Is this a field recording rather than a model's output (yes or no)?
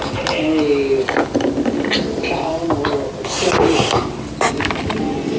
yes